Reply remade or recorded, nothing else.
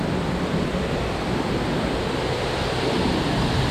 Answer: remade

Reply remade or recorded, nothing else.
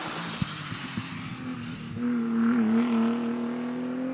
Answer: recorded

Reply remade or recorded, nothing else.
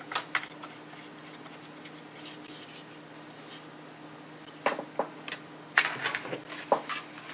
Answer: recorded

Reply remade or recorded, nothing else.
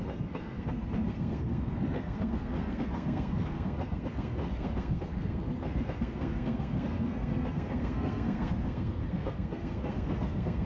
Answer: remade